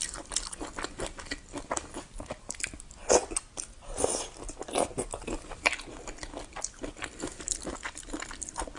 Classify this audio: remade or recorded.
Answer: recorded